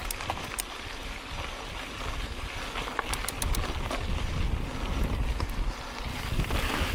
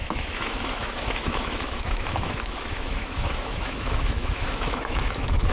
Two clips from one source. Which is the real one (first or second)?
first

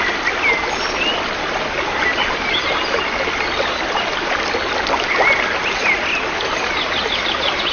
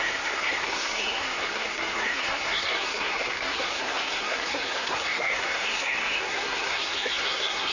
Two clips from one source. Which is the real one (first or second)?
first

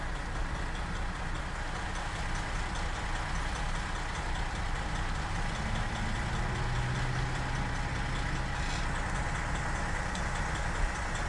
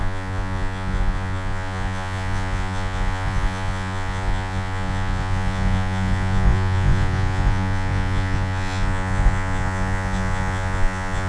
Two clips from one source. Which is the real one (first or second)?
first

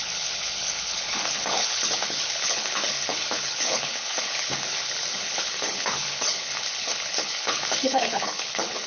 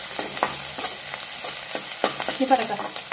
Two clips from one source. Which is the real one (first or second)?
second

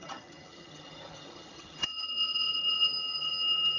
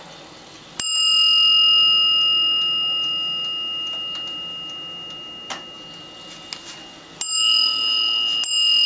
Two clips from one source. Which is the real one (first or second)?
second